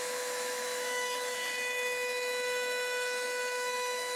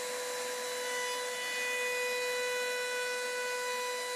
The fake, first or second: first